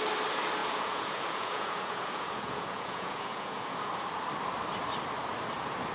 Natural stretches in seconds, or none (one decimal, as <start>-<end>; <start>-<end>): 0.0-0.6; 3.9-5.9